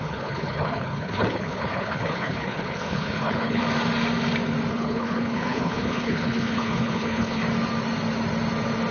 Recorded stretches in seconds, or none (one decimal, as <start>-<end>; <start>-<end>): 3.6-4.7; 7.4-8.9